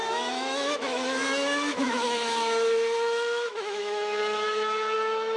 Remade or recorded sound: remade